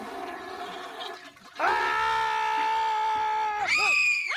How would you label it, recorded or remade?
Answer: recorded